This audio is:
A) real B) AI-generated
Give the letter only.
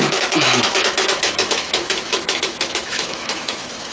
B